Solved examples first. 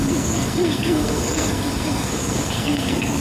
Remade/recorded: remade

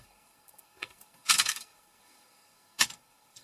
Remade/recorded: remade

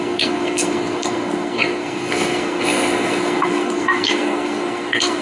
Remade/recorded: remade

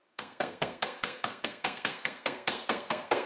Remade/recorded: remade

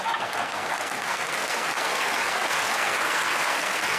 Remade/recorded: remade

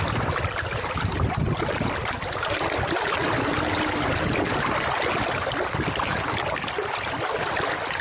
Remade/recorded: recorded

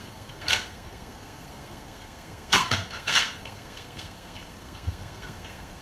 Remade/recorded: remade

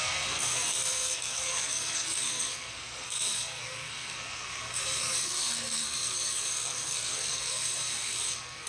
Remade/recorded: remade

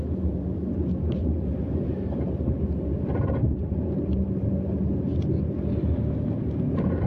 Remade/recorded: recorded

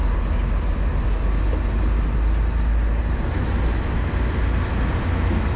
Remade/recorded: recorded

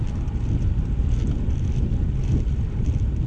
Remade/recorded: recorded